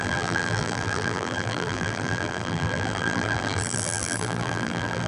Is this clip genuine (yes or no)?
no